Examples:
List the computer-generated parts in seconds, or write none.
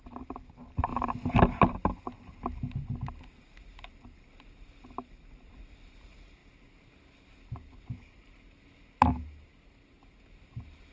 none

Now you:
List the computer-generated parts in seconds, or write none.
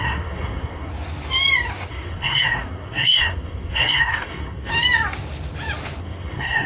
0.0-0.9 (codec, SNAC); 1.9-4.7; 6.0-6.7